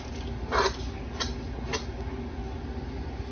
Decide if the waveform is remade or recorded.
recorded